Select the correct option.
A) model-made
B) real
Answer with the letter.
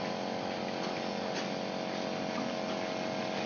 B